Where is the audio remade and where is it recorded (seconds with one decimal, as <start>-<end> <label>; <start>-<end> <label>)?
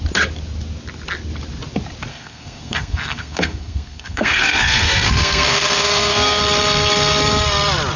0.0-2.1 recorded; 2.1-6.4 remade; 6.4-8.0 recorded